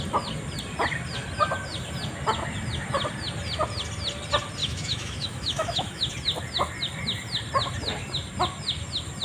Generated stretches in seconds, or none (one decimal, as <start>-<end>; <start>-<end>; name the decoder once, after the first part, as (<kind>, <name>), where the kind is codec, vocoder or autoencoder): 4.6-6.1 (autoencoder, DAC-VAE)